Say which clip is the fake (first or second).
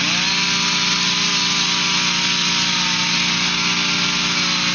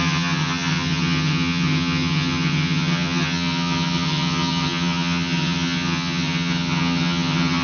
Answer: second